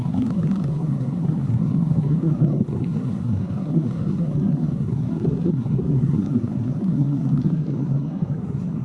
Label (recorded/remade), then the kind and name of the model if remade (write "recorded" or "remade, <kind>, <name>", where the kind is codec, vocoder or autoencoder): remade, codec, SNAC